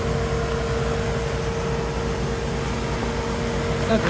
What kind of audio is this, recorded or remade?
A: recorded